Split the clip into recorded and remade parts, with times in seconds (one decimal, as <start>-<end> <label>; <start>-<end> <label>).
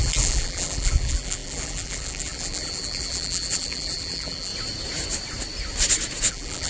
0.0-4.5 remade; 4.5-6.3 recorded; 6.3-6.7 remade